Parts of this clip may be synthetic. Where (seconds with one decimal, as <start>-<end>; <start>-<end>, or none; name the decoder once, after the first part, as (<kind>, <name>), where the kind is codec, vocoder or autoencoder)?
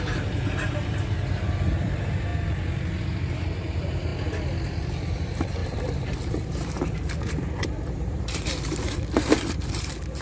0.0-2.3 (vocoder, BigVGAN v2); 3.0-4.1; 5.1-10.2